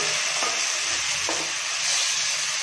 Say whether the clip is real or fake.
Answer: real